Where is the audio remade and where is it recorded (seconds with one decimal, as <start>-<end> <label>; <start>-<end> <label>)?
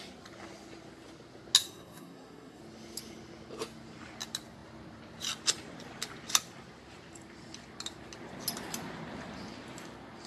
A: 0.0-1.6 recorded; 1.6-2.6 remade; 2.6-10.3 recorded